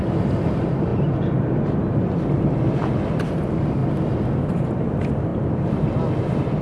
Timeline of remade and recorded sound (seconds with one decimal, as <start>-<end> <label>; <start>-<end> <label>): 0.0-0.9 remade; 0.9-3.1 recorded; 3.1-3.8 remade; 3.8-4.7 recorded; 4.7-5.3 remade; 5.3-5.9 recorded; 5.9-6.6 remade